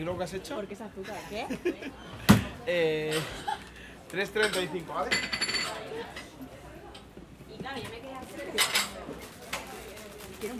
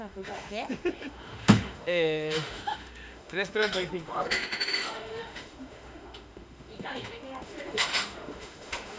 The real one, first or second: first